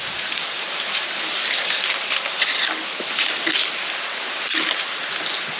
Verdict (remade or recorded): recorded